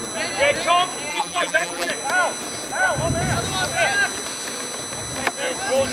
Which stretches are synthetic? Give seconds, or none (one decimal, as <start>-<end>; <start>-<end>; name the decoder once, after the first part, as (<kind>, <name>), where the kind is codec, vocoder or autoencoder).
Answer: 1.1-1.9 (vocoder, BigVGAN v2)